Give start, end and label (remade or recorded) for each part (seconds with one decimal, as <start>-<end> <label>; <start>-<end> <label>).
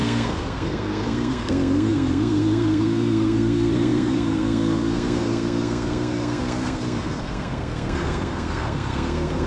0.0-9.5 remade